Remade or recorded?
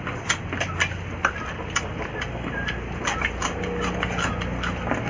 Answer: recorded